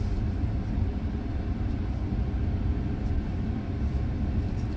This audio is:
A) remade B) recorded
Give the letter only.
B